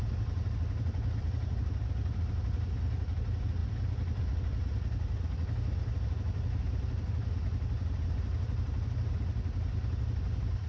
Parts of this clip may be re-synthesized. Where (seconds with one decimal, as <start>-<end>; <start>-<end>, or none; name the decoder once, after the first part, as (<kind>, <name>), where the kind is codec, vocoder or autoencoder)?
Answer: none